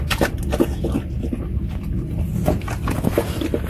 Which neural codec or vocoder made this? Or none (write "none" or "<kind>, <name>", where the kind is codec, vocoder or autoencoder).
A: none